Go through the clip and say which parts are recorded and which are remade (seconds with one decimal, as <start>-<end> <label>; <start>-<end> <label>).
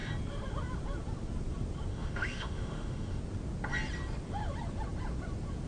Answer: 0.0-1.9 recorded; 1.9-3.2 remade; 3.2-5.7 recorded